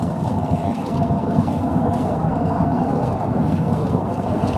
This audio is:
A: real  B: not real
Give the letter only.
B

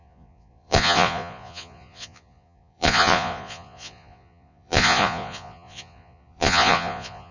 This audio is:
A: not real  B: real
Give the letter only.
A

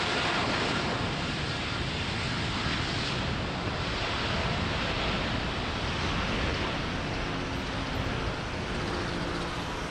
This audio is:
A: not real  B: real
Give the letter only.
B